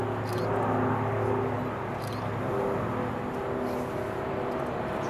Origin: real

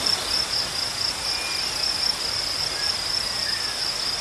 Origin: real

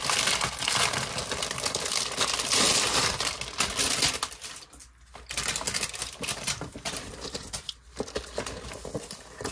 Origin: real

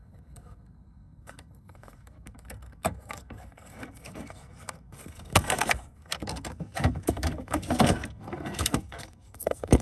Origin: fake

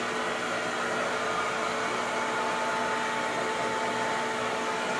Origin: real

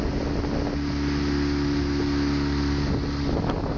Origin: real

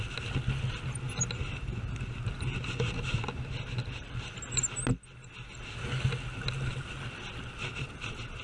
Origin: real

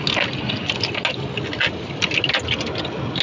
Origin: real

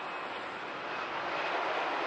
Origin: real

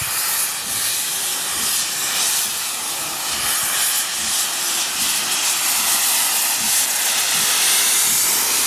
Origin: real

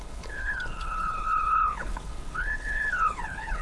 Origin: fake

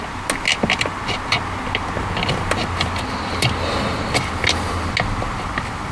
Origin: real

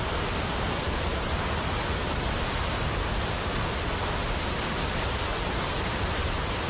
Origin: real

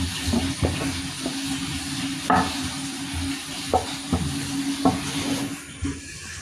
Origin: real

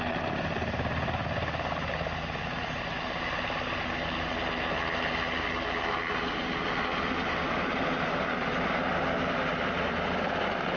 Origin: real